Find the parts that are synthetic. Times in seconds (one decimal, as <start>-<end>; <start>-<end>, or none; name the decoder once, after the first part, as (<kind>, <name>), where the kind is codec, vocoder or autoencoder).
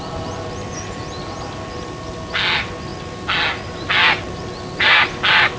none